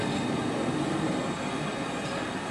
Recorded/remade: recorded